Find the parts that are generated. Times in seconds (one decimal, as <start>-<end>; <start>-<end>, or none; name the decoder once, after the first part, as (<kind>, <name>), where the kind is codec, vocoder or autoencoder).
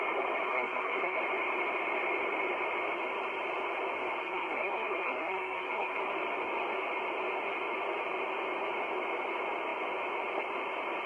0.4-1.2 (codec, SNAC); 4.2-6.0